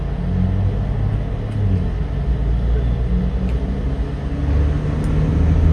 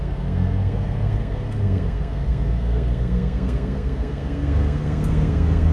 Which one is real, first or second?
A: first